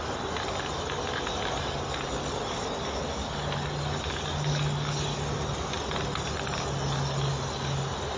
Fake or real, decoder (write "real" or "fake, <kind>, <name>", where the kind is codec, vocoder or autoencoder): real